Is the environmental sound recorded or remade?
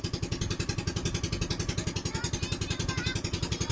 recorded